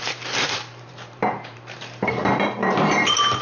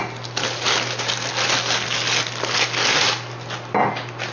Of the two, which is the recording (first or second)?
second